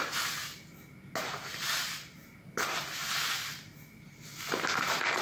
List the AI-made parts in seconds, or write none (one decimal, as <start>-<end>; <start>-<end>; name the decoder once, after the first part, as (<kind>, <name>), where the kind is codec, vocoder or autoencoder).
0.0-0.4 (vocoder, BigVGAN v2); 1.2-3.5; 4.8-5.2